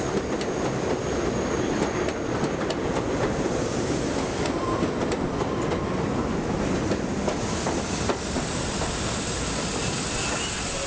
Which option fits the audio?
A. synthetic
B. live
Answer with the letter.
B